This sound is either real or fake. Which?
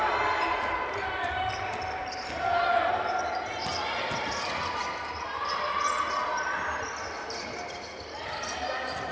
real